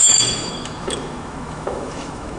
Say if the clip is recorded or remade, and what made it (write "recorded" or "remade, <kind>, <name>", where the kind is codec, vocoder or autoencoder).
remade, autoencoder, DAC-VAE